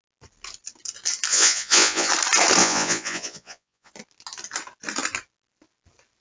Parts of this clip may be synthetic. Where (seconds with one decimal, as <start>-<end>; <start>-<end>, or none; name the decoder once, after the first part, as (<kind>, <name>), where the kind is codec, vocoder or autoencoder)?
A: 1.3-2.1 (vocoder, Vocos); 2.6-3.9